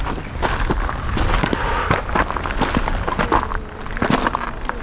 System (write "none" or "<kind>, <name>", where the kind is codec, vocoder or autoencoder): none